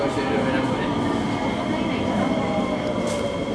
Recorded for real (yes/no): yes